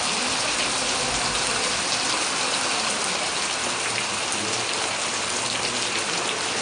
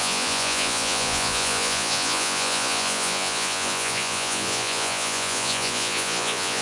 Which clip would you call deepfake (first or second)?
second